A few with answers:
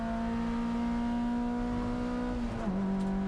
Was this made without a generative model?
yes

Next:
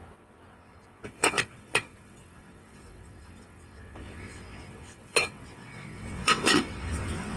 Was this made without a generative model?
no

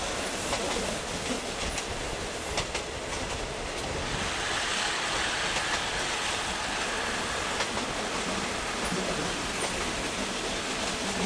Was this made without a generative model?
yes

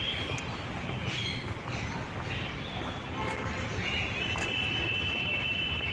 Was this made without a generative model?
yes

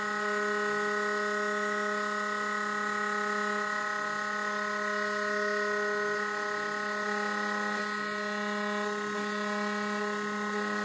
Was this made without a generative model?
yes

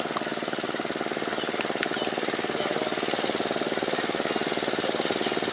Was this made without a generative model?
yes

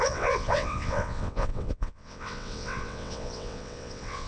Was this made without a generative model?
no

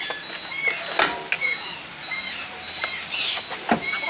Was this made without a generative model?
yes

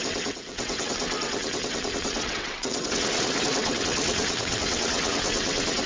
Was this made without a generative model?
no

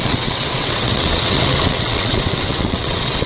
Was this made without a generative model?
no